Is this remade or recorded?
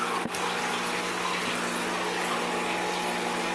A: recorded